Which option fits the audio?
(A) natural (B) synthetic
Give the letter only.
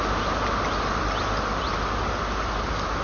A